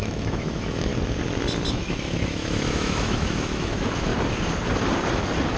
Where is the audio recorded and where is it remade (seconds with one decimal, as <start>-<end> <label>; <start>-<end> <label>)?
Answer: 0.0-0.9 remade; 0.9-1.7 recorded; 1.7-4.1 remade; 4.1-5.6 recorded